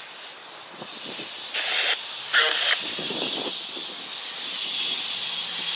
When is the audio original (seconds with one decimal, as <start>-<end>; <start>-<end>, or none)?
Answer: 0.0-5.8